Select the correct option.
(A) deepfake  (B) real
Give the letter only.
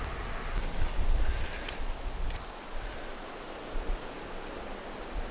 B